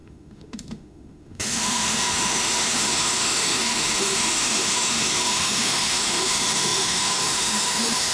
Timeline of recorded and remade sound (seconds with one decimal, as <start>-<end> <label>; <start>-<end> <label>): 0.0-8.1 remade